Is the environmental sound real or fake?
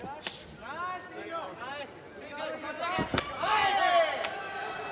real